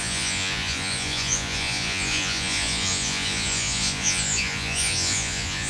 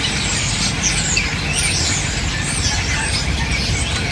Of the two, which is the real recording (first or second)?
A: second